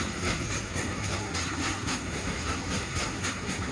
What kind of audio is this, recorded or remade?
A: remade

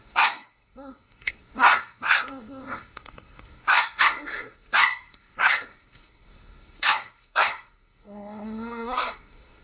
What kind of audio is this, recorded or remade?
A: remade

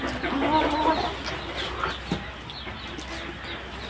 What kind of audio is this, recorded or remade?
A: recorded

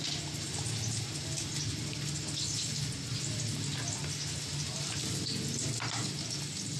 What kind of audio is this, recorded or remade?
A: recorded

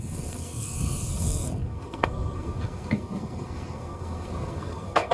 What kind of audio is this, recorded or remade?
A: remade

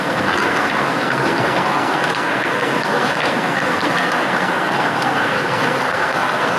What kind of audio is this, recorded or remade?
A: remade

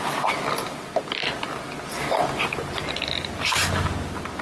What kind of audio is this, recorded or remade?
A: recorded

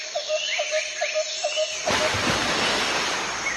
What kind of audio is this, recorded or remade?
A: recorded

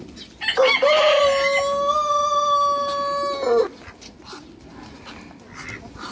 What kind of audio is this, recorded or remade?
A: recorded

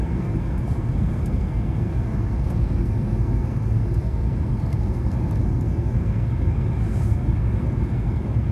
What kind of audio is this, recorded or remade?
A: remade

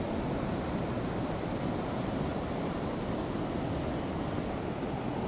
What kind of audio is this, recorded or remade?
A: recorded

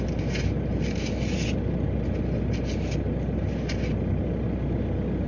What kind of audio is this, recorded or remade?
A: recorded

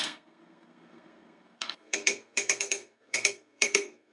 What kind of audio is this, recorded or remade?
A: remade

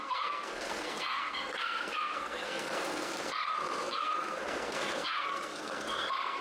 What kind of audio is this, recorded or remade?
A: remade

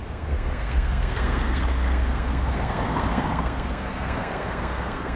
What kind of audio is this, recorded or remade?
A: remade